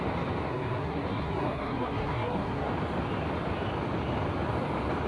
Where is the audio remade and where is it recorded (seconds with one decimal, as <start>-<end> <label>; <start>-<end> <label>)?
0.0-0.5 recorded; 0.5-2.7 remade; 2.7-5.1 recorded